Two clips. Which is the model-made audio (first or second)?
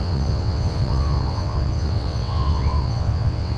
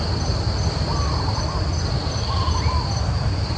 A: first